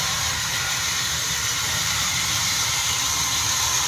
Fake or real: fake